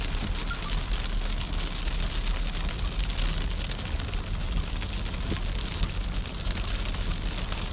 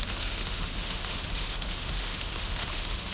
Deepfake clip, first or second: second